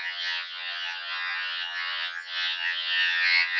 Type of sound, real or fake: fake